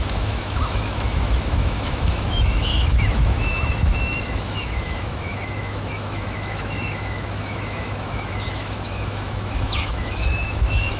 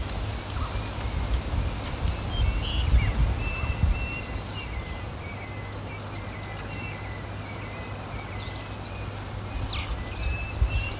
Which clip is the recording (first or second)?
second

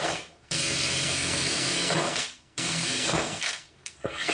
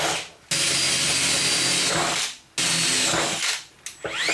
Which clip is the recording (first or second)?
second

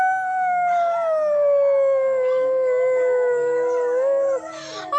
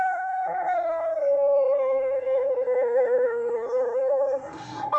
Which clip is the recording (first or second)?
first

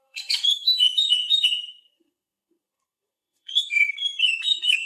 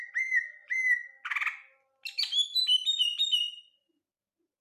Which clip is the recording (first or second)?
second